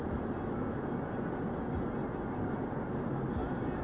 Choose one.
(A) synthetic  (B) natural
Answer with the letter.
B